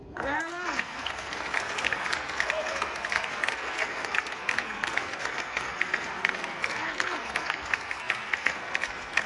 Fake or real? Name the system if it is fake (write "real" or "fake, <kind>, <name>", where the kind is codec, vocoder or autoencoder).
fake, codec, SNAC